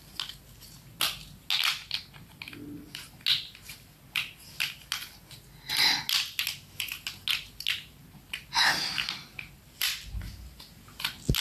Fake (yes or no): no